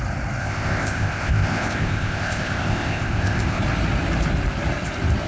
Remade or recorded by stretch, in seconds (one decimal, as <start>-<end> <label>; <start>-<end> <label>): 0.0-0.4 recorded; 0.4-3.6 remade; 3.6-5.3 recorded